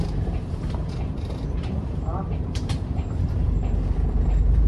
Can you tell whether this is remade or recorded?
remade